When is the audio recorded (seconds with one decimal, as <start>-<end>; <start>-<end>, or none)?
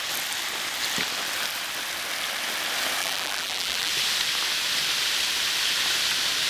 0.0-3.0; 3.9-6.5